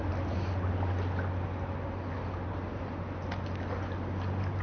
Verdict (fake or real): real